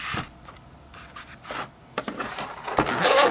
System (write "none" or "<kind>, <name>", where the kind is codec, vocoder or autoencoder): none